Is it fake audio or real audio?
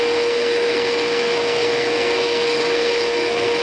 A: fake